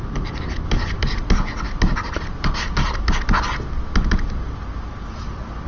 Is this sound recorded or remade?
recorded